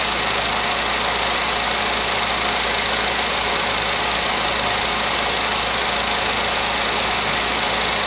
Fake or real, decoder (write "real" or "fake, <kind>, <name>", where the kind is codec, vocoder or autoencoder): real